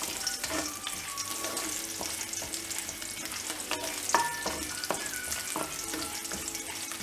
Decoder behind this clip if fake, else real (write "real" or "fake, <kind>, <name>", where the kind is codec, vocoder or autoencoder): real